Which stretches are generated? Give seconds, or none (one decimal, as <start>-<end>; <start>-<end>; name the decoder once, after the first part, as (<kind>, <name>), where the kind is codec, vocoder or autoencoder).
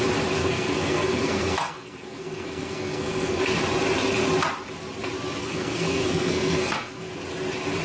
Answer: 0.4-3.4 (codec, SNAC); 5.4-7.1